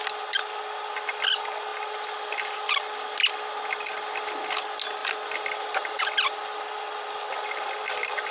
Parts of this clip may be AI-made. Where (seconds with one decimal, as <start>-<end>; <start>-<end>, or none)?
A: none